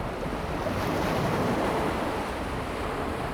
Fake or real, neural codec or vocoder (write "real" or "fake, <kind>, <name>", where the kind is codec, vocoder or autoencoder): real